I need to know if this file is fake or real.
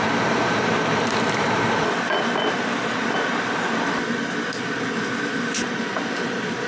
fake